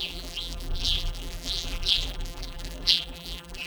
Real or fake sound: fake